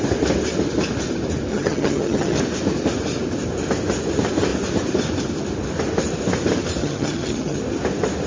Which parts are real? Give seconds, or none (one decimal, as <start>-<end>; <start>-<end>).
0.0-1.5; 2.4-6.8; 7.6-8.3

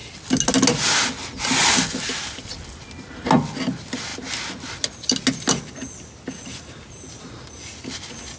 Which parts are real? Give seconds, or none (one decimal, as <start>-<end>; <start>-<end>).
0.0-8.4

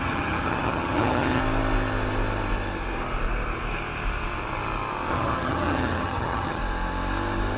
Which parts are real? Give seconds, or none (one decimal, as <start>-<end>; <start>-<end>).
1.4-5.1; 6.6-7.6

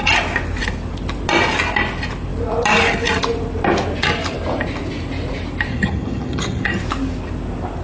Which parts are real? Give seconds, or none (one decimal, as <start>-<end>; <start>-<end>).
0.0-5.7; 6.8-7.8

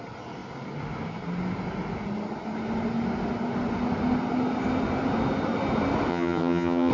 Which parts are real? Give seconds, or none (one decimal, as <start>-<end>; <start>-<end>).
0.0-6.1

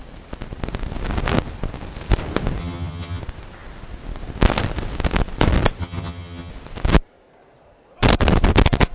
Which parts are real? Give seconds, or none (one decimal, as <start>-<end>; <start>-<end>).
0.0-2.6; 3.2-5.8; 6.5-8.9